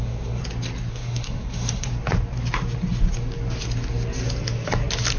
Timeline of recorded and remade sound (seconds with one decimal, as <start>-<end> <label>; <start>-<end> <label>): 0.0-0.4 remade; 0.4-0.9 recorded; 0.9-1.9 remade; 1.9-5.2 recorded